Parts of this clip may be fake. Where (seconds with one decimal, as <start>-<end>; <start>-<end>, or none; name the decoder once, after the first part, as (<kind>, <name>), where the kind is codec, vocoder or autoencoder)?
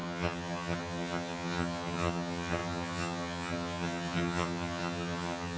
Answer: 0.0-5.6 (vocoder, HiFi-GAN)